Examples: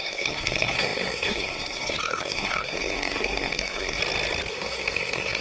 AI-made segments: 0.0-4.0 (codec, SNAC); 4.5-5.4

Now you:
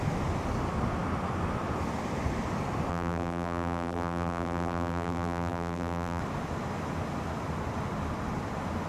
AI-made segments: 2.9-6.2 (vocoder, BigVGAN v2)

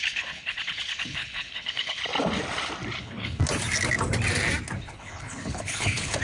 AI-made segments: 0.0-2.0 (codec, HILCodec); 3.0-3.4; 4.8-6.2

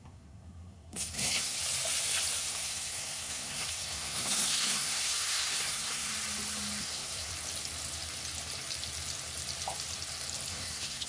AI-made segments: 0.0-1.6 (codec, SNAC); 2.4-6.1; 6.8-7.3; 10.5-11.1

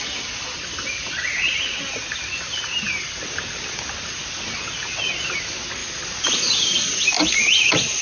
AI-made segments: 5.8-6.4 (vocoder, BigVGAN v2)

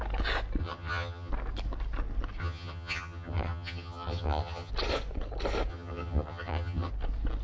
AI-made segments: 0.6-1.3 (vocoder, HiFi-GAN); 2.4-4.7; 5.7-6.9

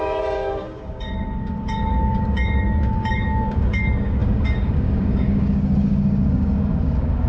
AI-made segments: 0.0-7.3 (codec, DAC)